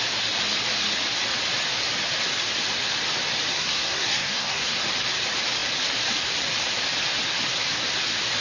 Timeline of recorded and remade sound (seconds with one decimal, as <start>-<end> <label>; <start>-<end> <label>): 0.0-3.5 recorded; 3.5-4.8 remade; 4.8-8.4 recorded

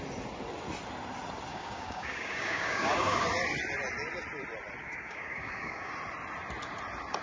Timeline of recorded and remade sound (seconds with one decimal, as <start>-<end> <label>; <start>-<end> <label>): 0.0-1.5 recorded; 1.5-3.2 remade; 3.2-4.8 recorded; 4.8-5.9 remade; 5.9-7.2 recorded

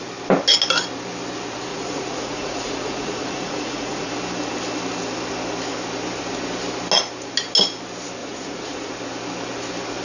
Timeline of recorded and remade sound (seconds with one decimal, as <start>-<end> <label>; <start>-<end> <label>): 0.0-1.7 recorded; 1.7-4.1 remade; 4.1-8.2 recorded; 8.2-8.9 remade; 8.9-10.0 recorded

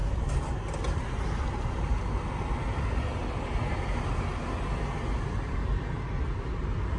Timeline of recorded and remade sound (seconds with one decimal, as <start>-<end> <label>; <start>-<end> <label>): 0.0-7.0 recorded

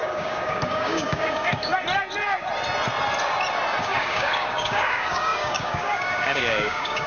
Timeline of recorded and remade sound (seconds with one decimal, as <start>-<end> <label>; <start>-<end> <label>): 0.0-1.7 remade; 1.7-3.8 recorded; 3.8-7.1 remade

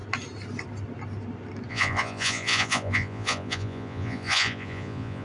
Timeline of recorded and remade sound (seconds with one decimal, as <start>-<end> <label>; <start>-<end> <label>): 0.0-1.7 recorded; 1.7-5.2 remade

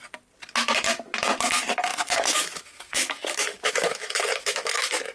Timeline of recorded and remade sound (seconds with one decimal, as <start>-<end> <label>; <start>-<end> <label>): 0.0-1.9 recorded; 1.9-5.1 remade

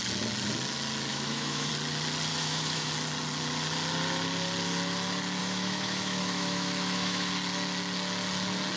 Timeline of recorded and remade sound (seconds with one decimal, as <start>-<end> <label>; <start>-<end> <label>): 0.0-1.1 recorded; 1.1-1.7 remade; 1.7-2.3 recorded; 2.3-2.9 remade; 2.9-5.4 recorded; 5.4-7.3 remade; 7.3-8.8 recorded